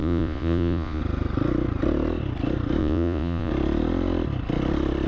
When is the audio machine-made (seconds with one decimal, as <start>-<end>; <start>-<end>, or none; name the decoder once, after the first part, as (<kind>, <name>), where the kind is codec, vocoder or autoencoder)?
0.0-1.0 (vocoder, Vocos); 2.8-3.5